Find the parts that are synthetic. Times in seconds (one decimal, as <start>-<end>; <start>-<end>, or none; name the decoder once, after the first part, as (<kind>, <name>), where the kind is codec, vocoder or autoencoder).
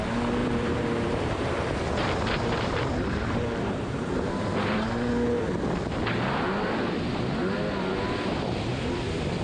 0.4-5.1 (vocoder, BigVGAN v2)